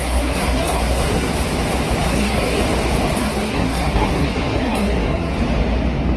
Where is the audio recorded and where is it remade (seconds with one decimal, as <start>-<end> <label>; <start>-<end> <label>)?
0.0-1.3 remade; 1.3-2.0 recorded; 2.0-2.6 remade; 2.6-3.2 recorded; 3.2-5.3 remade; 5.3-6.2 recorded